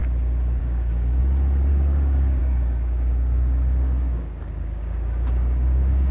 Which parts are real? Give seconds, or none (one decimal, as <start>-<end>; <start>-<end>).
0.0-0.6; 1.2-1.7